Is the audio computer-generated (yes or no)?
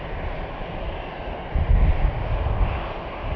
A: no